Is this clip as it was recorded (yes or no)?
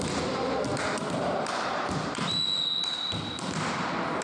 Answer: yes